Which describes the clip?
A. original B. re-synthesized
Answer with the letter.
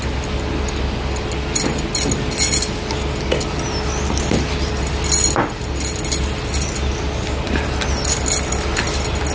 A